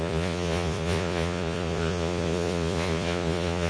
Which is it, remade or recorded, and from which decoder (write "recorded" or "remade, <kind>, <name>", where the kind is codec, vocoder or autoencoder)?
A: remade, vocoder, Vocos